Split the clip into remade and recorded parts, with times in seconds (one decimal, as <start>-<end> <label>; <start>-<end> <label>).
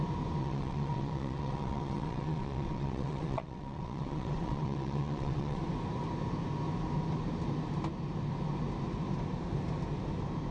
0.0-0.4 recorded; 0.4-5.6 remade; 5.6-10.5 recorded